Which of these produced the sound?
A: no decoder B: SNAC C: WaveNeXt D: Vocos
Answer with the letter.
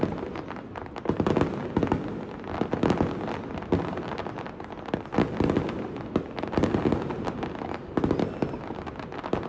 A